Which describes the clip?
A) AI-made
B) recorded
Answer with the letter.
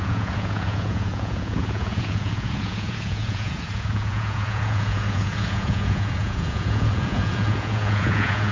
A